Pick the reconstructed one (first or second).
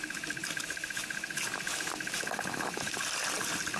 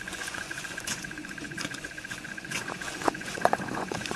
second